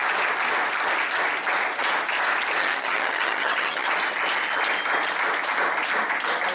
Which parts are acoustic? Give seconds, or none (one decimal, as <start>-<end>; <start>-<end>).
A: 0.0-2.6; 3.9-6.5